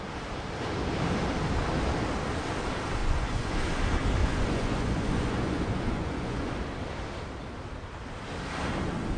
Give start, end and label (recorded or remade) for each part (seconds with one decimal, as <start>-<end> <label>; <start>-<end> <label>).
0.0-3.0 recorded; 3.0-3.6 remade; 3.6-4.2 recorded; 4.2-6.6 remade; 6.6-9.2 recorded